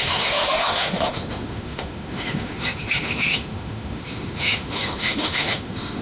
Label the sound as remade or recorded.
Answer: remade